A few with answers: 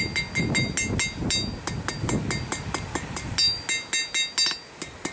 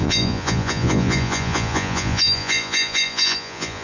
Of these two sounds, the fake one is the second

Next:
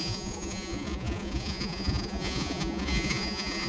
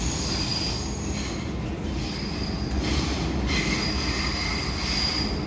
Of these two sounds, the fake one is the first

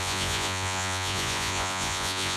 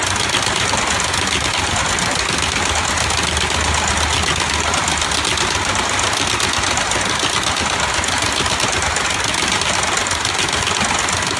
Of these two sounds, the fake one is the first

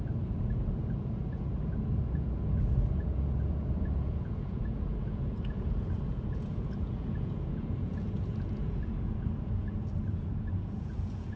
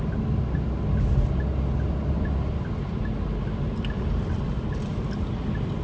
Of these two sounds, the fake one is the first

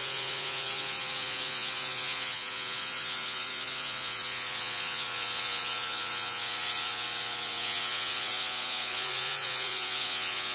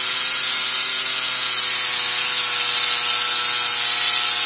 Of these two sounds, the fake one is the first